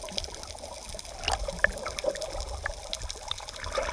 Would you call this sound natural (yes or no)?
yes